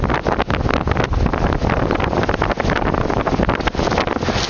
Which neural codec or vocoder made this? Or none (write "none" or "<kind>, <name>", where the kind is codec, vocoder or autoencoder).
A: none